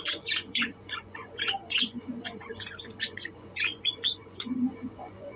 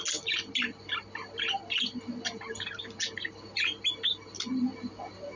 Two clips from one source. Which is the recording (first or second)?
second